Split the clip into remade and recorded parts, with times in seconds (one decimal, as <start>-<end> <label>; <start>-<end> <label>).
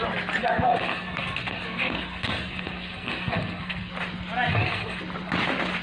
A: 0.0-0.4 recorded; 0.4-3.9 remade; 3.9-4.5 recorded; 4.5-5.0 remade; 5.0-5.8 recorded